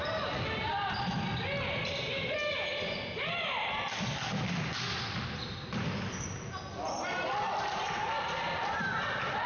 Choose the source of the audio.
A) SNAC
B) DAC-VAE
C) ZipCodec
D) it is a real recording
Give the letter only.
D